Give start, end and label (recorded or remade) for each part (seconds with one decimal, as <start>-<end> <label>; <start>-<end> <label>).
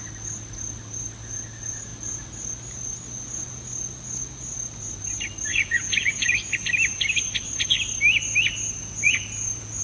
0.0-5.5 recorded; 5.5-6.5 remade; 6.5-8.8 recorded; 8.8-9.8 remade